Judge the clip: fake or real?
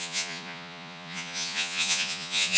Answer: fake